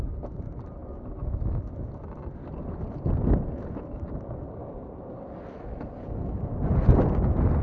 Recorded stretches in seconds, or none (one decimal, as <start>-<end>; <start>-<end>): 0.0-7.6